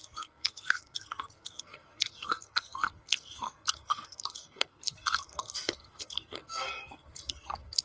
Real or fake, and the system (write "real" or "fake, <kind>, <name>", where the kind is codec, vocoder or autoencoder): fake, codec, SNAC